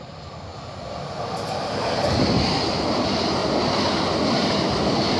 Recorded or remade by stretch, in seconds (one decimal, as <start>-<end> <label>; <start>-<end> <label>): 0.0-0.5 remade; 0.5-2.1 recorded; 2.1-5.2 remade